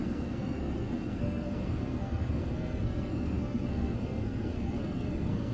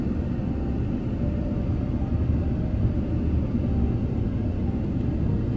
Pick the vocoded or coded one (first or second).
first